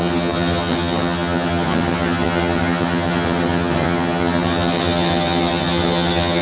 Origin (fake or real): fake